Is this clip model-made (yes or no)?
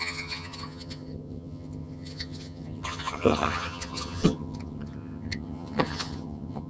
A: yes